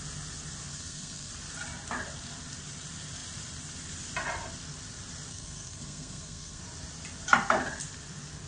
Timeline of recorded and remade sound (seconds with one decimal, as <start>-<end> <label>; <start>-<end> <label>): 0.0-0.7 recorded; 0.7-1.3 remade; 1.3-5.3 recorded; 5.3-6.6 remade; 6.6-8.5 recorded